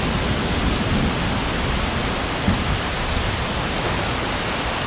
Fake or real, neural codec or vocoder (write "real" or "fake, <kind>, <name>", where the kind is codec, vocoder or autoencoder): real